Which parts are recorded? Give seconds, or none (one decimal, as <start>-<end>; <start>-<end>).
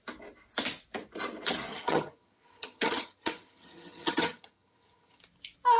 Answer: 0.0-1.7; 5.2-5.8